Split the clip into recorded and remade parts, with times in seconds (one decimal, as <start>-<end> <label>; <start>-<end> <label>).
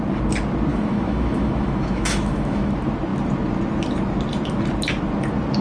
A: 0.0-0.7 recorded; 0.7-2.7 remade; 2.7-5.6 recorded